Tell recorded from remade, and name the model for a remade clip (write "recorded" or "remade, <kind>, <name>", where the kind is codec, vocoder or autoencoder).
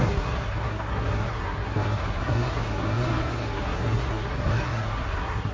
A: remade, codec, SNAC